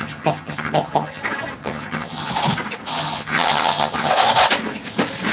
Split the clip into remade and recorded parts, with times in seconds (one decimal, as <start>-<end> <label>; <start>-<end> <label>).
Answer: 0.0-1.2 remade; 1.2-1.6 recorded; 1.6-2.3 remade; 2.3-2.9 recorded; 2.9-4.1 remade; 4.1-5.3 recorded